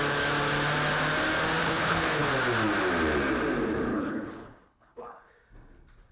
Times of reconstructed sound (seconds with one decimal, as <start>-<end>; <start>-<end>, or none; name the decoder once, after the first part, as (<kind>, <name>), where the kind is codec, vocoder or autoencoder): 1.6-2.3 (codec, HILCodec); 3.9-5.3